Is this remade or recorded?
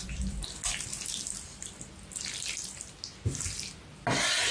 recorded